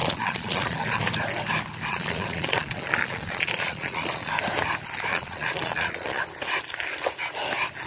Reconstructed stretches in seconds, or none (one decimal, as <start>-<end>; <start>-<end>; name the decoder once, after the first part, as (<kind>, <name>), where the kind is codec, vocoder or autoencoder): 0.0-1.0 (vocoder, Vocos); 1.9-4.3; 5.1-6.2